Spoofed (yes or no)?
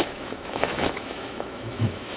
yes